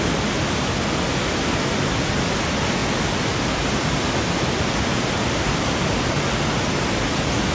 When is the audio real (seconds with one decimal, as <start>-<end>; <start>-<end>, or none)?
0.0-7.5